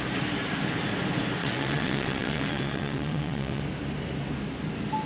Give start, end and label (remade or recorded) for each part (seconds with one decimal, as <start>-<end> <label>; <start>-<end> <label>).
0.0-1.4 recorded; 1.4-3.6 remade; 3.6-5.1 recorded